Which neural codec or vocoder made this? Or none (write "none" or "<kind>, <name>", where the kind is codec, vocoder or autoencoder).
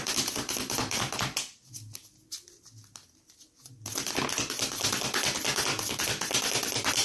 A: none